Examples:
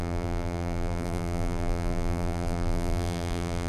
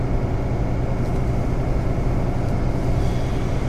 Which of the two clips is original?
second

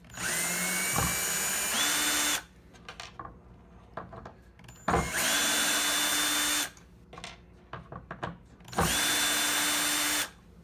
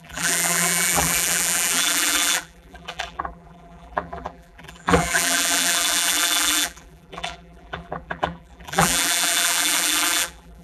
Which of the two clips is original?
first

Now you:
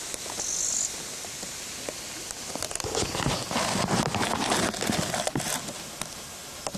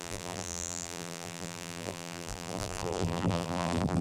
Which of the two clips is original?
first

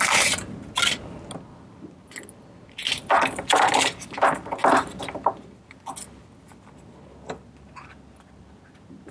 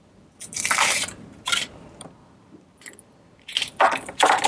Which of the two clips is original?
first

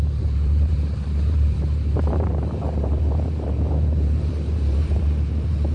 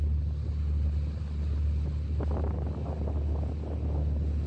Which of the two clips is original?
second